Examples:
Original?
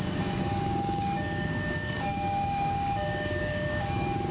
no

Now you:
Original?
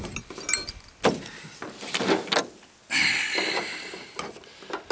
yes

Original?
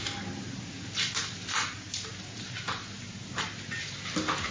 yes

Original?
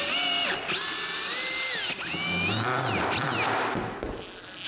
yes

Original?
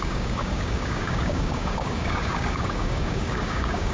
no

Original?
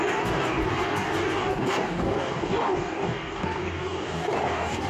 no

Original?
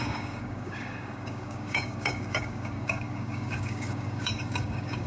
no